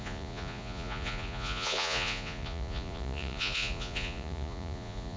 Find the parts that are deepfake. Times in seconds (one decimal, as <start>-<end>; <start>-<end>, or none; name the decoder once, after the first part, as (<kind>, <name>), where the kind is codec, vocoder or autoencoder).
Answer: 0.0-5.2 (vocoder, Vocos)